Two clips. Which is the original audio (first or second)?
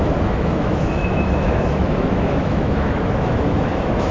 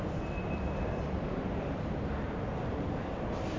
second